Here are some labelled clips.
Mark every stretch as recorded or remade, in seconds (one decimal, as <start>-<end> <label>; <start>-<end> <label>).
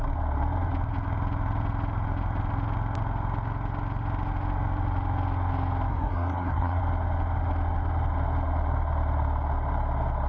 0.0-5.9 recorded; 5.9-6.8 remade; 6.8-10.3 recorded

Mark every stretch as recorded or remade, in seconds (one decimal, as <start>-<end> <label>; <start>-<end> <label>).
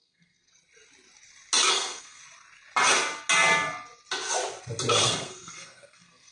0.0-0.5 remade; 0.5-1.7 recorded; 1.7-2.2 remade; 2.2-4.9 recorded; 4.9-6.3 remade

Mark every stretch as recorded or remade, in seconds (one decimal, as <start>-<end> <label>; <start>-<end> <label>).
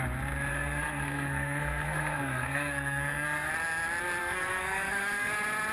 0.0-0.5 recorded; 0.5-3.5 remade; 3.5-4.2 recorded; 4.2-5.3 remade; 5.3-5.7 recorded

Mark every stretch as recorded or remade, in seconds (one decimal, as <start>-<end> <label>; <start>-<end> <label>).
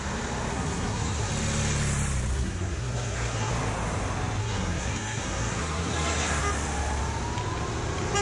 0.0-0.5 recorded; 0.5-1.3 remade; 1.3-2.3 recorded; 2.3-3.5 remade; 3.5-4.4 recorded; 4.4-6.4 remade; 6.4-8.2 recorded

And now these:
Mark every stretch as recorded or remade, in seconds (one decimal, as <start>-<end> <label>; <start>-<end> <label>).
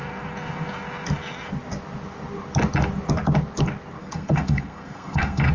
0.0-4.0 recorded; 4.0-5.5 remade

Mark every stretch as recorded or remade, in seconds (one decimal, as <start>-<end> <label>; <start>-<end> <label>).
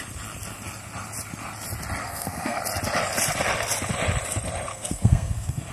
0.0-2.0 recorded; 2.0-2.6 remade; 2.6-4.7 recorded; 4.7-5.7 remade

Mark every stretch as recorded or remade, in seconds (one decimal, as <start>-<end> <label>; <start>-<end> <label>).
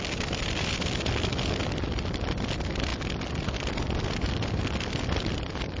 0.0-5.8 recorded